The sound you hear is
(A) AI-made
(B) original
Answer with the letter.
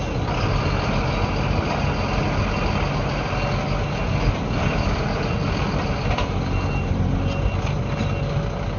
B